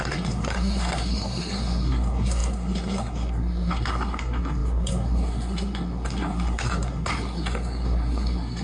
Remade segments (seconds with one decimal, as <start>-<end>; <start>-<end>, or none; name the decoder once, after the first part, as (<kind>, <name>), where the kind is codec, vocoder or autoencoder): 0.0-8.6 (codec, SNAC)